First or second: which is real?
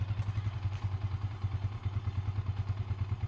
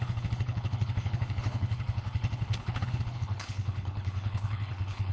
first